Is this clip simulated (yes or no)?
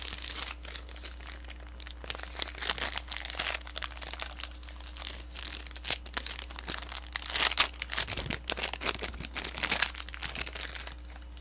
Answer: no